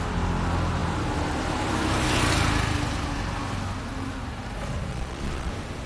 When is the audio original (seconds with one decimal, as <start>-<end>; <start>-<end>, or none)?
0.0-4.9; 5.5-5.9